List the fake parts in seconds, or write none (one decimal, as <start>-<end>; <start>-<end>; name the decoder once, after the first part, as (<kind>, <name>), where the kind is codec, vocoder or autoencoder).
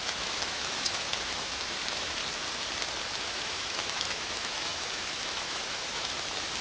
0.0-2.2 (autoencoder, DAC-VAE); 3.3-6.6